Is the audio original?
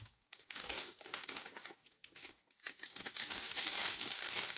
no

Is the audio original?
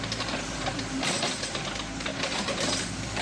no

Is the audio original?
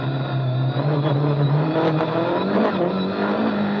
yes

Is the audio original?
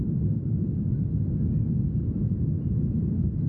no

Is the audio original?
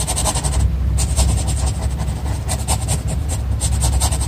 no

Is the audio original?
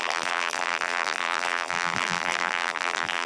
no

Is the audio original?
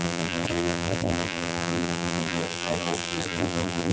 no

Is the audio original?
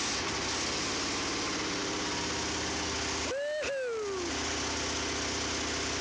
yes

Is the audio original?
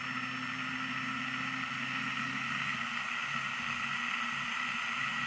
yes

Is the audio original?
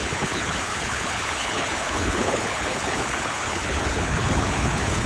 no